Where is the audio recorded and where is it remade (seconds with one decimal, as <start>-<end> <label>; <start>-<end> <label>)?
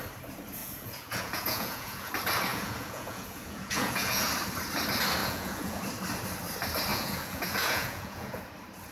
0.0-0.6 recorded; 0.6-2.1 remade; 2.1-2.5 recorded; 2.5-4.3 remade; 4.3-5.2 recorded; 5.2-5.8 remade; 5.8-6.9 recorded; 6.9-8.4 remade; 8.4-8.9 recorded